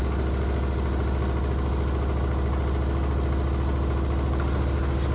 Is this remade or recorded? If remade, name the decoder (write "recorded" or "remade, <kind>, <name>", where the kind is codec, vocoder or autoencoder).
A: recorded